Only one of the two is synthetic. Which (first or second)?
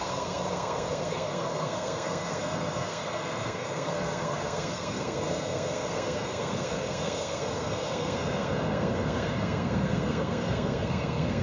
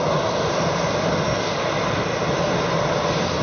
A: first